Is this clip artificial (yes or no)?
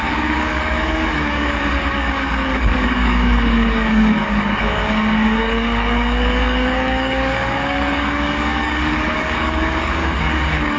yes